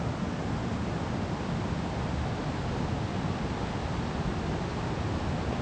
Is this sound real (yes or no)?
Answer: yes